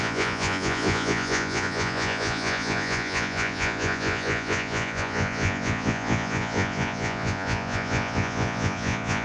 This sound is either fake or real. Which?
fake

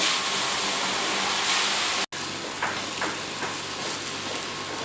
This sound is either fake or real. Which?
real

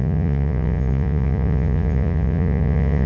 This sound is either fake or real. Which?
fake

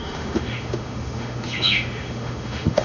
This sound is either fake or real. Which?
fake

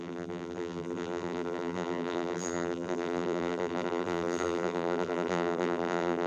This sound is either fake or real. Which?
fake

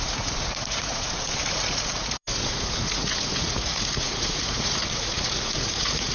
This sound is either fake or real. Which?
fake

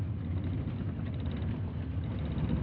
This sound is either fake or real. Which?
real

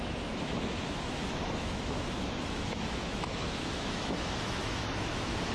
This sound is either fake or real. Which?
fake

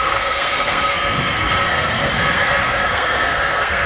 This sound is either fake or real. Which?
fake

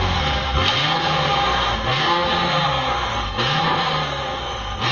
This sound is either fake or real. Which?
fake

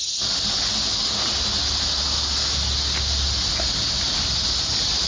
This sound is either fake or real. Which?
real